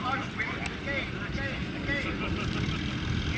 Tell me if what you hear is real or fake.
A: real